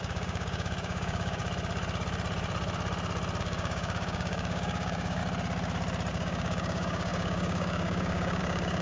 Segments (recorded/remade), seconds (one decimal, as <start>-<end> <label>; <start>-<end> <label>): 0.0-1.4 remade; 1.4-3.4 recorded; 3.4-5.2 remade; 5.2-6.1 recorded; 6.1-8.8 remade